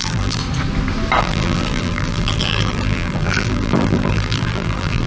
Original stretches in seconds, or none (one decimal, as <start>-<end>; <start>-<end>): 0.4-1.2